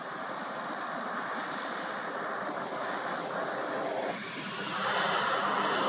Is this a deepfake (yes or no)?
no